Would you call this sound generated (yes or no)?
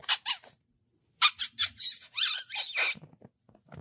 no